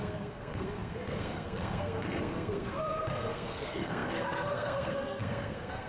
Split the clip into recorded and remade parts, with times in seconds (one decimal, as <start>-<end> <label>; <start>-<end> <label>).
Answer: 0.0-5.9 remade